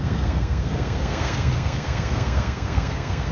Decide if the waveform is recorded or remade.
remade